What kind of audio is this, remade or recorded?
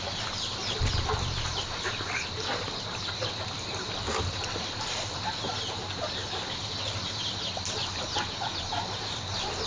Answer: recorded